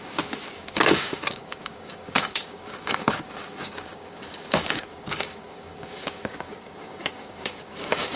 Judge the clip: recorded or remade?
remade